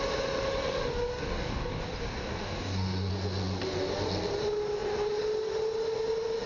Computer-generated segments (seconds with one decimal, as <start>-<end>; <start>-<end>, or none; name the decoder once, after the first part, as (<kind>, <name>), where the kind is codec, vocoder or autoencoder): 1.1-1.8 (codec, DAC); 2.2-3.1